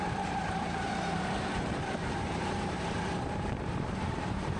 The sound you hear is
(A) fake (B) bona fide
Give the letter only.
A